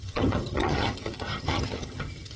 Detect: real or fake fake